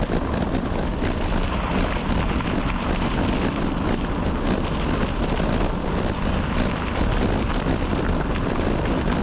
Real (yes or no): yes